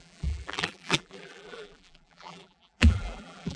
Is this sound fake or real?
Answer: fake